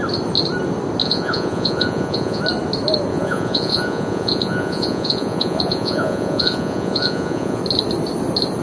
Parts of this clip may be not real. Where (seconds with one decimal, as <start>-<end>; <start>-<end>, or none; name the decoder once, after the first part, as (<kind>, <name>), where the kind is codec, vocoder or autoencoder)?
1.0-2.4 (vocoder, Vocos); 3.1-7.6